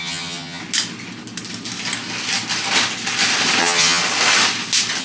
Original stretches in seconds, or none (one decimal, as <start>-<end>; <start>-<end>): 0.6-3.6; 4.0-5.0